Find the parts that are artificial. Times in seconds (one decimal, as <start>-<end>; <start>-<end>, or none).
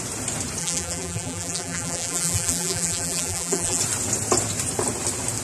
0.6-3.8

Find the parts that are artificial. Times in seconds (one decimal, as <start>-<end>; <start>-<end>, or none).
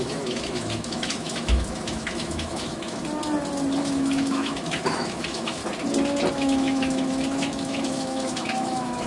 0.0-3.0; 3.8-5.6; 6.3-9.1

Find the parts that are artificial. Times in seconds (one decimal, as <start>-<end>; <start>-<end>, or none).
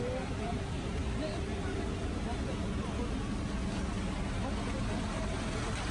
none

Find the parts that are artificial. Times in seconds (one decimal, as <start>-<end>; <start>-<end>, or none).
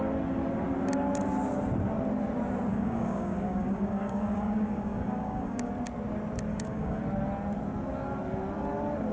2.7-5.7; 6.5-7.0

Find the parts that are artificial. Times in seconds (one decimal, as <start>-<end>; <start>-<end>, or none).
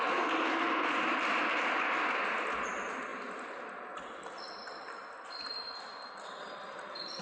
none